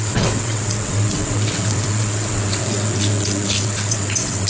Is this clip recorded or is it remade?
remade